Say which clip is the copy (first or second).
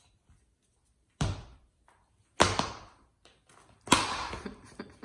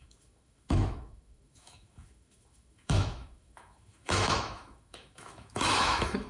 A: second